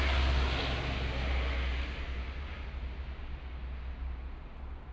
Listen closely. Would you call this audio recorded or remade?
recorded